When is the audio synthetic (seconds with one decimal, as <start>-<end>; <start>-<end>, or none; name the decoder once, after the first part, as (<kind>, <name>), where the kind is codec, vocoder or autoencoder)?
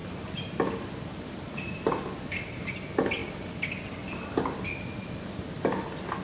0.0-1.9 (vocoder, BigVGAN v2); 3.2-4.6